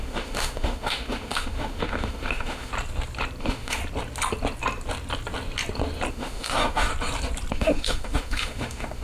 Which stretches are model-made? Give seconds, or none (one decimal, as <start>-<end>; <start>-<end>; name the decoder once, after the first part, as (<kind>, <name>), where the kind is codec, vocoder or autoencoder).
0.0-2.7 (autoencoder, DAC-VAE); 3.4-3.8; 6.1-6.9; 7.5-9.0